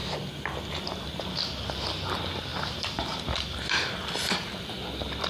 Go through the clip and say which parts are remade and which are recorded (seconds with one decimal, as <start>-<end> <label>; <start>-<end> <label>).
0.0-0.7 remade; 0.7-2.5 recorded; 2.5-5.3 remade